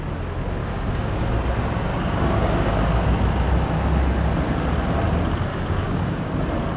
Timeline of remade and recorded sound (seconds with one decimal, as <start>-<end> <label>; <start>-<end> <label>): 0.0-0.6 recorded; 0.6-1.2 remade; 1.2-1.9 recorded; 1.9-2.8 remade; 2.8-5.5 recorded; 5.5-6.3 remade; 6.3-6.8 recorded